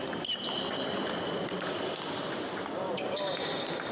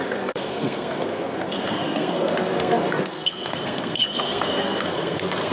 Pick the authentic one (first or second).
first